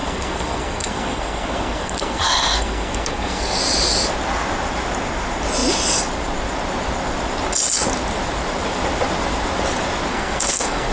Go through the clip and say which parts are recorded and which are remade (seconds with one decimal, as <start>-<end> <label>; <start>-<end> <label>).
0.0-3.6 remade; 3.6-10.1 recorded; 10.1-10.9 remade